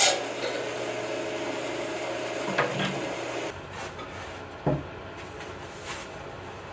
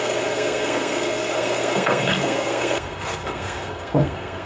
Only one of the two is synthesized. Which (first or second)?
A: second